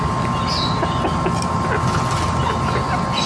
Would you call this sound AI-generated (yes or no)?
no